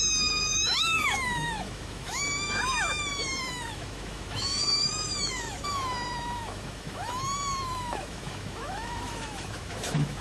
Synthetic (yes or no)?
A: yes